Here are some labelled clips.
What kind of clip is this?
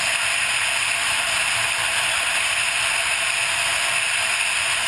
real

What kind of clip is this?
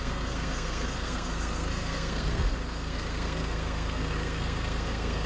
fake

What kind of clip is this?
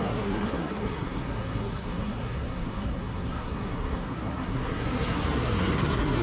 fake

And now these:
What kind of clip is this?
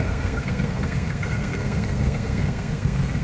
fake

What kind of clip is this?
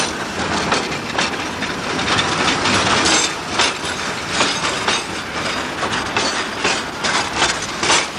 real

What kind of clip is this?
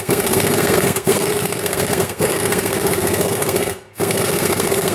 fake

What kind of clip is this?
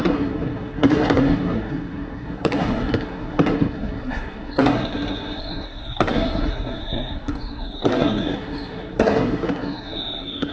fake